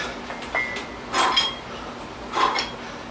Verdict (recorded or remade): recorded